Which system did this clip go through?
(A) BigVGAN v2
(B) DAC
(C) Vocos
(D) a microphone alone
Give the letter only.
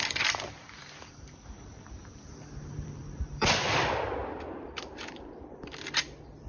A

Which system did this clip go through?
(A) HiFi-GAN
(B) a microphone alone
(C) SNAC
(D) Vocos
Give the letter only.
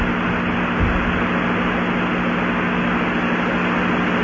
B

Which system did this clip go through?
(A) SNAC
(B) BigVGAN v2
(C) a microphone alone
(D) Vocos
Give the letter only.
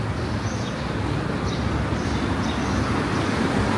C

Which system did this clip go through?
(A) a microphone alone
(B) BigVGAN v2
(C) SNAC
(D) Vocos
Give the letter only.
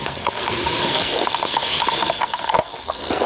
C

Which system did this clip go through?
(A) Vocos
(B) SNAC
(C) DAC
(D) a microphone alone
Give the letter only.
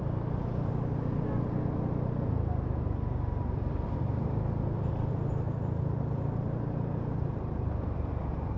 D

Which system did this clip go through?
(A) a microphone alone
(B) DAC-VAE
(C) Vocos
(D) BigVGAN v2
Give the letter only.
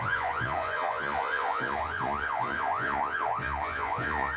C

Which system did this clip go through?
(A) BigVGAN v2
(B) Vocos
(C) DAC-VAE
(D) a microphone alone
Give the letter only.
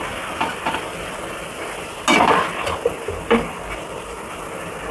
D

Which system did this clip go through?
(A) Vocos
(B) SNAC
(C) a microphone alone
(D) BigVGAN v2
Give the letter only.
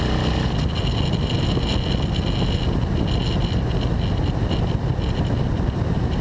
C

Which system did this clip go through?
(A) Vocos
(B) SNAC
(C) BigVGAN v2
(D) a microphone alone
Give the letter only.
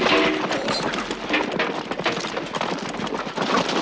D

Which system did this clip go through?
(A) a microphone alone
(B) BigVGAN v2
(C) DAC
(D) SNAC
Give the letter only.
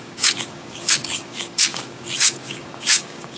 C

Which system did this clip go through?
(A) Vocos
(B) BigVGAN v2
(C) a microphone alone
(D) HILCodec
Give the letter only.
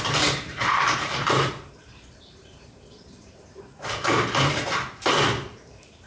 B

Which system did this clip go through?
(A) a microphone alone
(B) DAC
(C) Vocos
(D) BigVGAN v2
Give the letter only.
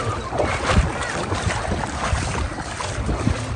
D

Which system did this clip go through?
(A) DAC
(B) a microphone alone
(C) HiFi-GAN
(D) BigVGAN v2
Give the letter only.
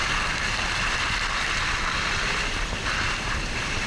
B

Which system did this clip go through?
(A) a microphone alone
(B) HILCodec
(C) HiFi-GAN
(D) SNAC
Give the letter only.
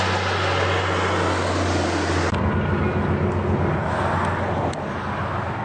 A